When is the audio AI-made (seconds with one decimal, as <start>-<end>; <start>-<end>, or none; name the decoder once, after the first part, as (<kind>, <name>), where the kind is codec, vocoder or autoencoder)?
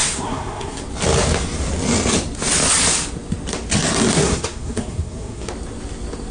0.0-0.8 (codec, SNAC); 4.1-5.5